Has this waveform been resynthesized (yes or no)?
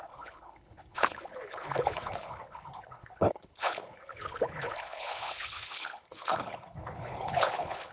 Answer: yes